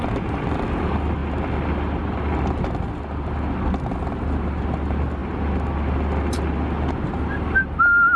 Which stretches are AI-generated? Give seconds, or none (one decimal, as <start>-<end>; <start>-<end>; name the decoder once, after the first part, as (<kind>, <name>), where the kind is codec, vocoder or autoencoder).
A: none